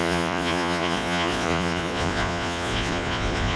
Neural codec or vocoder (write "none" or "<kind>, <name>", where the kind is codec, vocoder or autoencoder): vocoder, Vocos